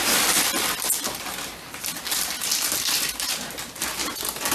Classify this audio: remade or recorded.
recorded